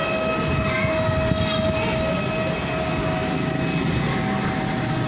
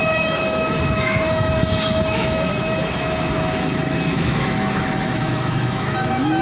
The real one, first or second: first